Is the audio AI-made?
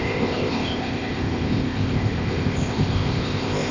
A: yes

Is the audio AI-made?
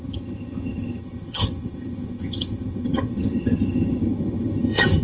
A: yes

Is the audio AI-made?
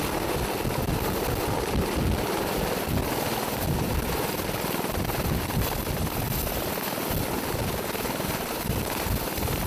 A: no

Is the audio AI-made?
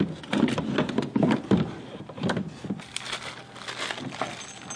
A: no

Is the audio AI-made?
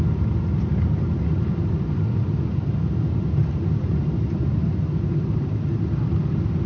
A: no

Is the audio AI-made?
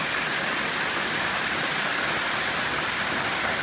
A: no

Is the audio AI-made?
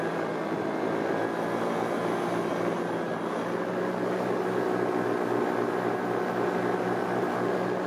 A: no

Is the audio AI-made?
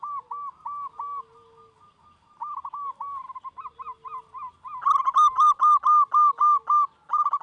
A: no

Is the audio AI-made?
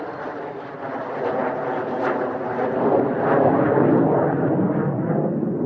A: no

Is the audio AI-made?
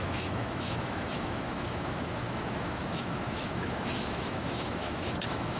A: yes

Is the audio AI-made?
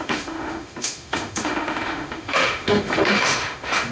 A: yes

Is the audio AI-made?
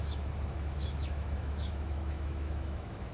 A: yes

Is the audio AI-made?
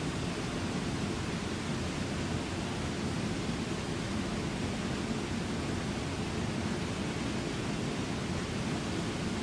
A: no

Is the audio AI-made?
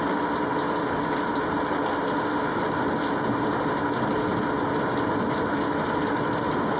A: no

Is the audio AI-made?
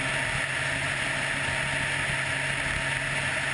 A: no